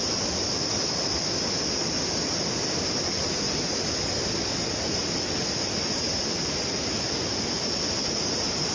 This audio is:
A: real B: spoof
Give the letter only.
A